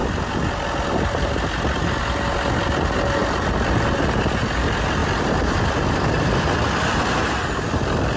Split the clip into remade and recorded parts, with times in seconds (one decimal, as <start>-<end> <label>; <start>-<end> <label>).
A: 0.0-5.0 recorded; 5.0-6.2 remade; 6.2-7.2 recorded; 7.2-8.2 remade